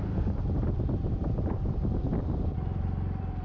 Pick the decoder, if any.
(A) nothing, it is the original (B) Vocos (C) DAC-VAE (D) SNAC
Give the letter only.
A